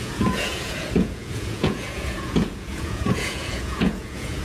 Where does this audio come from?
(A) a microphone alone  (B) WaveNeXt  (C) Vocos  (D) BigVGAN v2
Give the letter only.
C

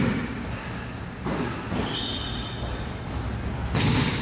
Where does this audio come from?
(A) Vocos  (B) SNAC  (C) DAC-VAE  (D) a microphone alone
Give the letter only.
D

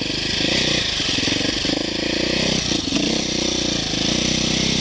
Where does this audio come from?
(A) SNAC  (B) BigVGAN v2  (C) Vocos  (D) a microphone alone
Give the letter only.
D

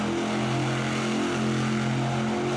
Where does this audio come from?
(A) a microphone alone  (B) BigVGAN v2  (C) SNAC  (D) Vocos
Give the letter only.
A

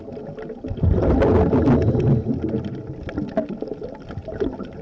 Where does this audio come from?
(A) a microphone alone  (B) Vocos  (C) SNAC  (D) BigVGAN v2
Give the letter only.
A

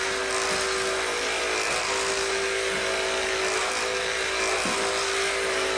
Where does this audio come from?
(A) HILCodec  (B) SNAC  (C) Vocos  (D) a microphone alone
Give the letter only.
D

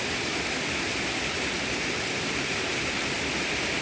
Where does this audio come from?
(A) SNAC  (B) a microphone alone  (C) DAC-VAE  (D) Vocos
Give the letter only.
B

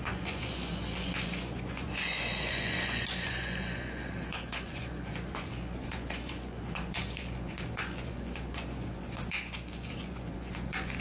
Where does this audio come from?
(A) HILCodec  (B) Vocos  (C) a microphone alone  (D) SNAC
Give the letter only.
B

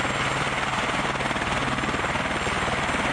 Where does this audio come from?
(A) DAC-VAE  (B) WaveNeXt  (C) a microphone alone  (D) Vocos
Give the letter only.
C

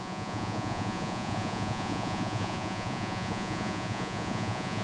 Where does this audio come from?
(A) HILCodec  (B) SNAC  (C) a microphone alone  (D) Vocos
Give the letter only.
D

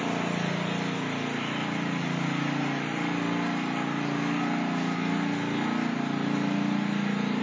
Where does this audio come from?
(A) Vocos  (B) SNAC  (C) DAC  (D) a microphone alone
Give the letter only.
D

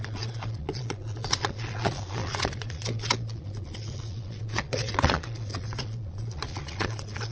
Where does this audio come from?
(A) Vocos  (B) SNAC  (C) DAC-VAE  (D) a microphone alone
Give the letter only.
A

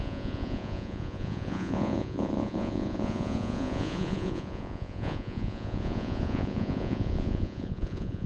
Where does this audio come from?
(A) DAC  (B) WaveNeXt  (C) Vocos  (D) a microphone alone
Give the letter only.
C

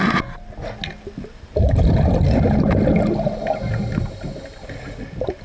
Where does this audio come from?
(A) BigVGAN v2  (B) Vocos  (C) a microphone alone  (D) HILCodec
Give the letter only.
C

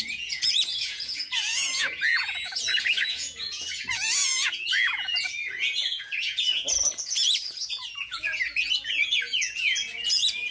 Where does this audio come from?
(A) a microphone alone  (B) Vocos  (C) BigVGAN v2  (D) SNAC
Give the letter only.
B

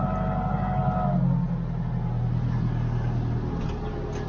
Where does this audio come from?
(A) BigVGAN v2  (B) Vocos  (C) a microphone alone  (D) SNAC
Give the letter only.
C